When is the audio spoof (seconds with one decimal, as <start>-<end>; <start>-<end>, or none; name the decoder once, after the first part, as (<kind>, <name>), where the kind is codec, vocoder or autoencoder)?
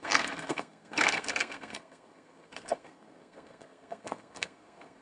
0.0-5.0 (codec, SNAC)